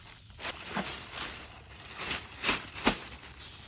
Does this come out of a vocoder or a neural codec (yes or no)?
no